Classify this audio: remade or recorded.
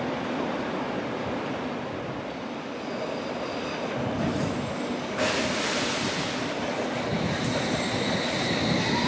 recorded